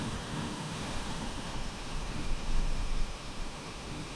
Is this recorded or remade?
remade